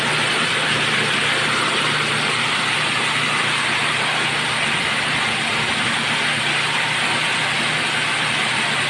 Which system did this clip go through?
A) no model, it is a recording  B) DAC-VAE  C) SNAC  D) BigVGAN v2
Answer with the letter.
D